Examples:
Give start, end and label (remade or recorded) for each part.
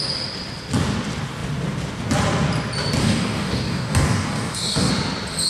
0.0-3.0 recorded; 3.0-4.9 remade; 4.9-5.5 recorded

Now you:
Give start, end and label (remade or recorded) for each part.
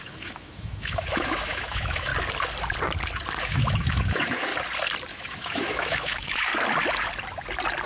0.0-2.1 remade; 2.1-3.4 recorded; 3.4-4.5 remade; 4.5-5.1 recorded; 5.1-6.5 remade; 6.5-7.9 recorded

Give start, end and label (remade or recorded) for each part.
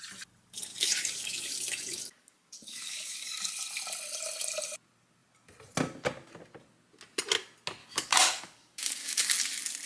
0.0-0.7 recorded; 0.7-3.5 remade; 3.5-7.8 recorded; 7.8-9.3 remade; 9.3-9.9 recorded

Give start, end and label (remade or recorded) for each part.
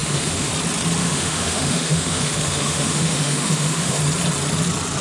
0.0-0.5 remade; 0.5-1.0 recorded; 1.0-4.0 remade; 4.0-5.0 recorded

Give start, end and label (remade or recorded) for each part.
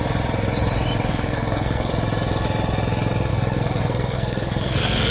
0.0-1.1 recorded; 1.1-1.9 remade; 1.9-3.3 recorded; 3.3-5.1 remade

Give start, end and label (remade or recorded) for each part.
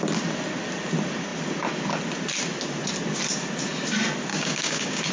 0.0-4.3 recorded; 4.3-5.1 remade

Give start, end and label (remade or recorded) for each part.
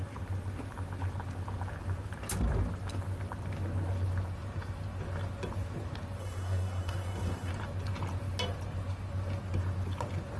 0.0-6.2 recorded; 6.2-7.5 remade; 7.5-10.4 recorded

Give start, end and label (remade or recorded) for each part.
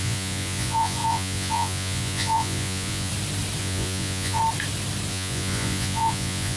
0.0-3.1 remade; 3.1-3.6 recorded; 3.6-4.4 remade; 4.4-5.1 recorded; 5.1-6.6 remade